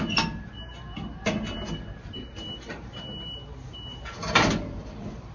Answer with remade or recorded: recorded